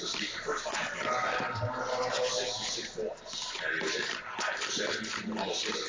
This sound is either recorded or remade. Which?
recorded